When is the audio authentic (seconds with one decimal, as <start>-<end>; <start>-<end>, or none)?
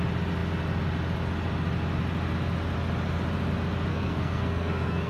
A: 0.0-3.9